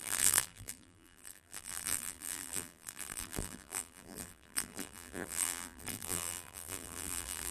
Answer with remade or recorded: remade